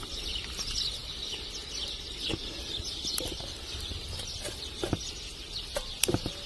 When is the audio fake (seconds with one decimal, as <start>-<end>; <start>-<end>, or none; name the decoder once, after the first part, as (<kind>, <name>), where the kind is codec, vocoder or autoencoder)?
none